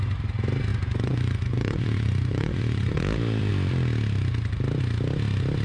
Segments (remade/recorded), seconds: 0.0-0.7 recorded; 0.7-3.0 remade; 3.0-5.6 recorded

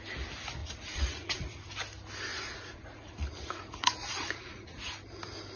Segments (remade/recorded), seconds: 0.0-0.6 recorded; 0.6-1.7 remade; 1.7-2.3 recorded; 2.3-4.9 remade; 4.9-5.6 recorded

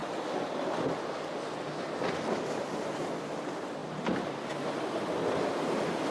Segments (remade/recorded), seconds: 0.0-6.1 recorded

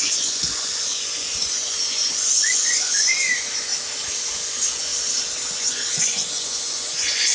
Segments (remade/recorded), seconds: 0.0-3.7 remade; 3.7-4.3 recorded; 4.3-4.9 remade; 4.9-5.5 recorded; 5.5-7.3 remade